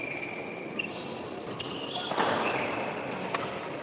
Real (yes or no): yes